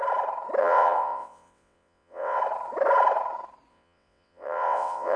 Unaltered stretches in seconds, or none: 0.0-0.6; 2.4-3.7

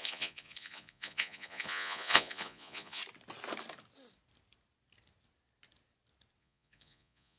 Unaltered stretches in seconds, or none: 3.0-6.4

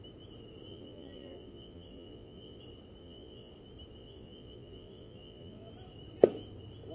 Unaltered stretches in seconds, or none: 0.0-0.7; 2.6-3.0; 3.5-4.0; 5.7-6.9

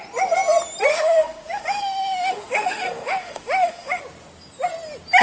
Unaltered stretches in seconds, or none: 0.0-0.9; 4.0-5.2